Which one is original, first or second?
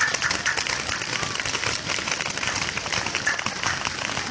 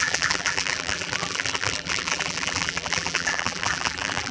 first